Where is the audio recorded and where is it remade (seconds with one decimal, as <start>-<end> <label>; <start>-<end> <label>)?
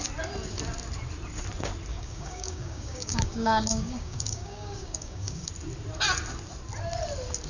0.0-1.9 recorded; 1.9-5.5 remade; 5.5-7.5 recorded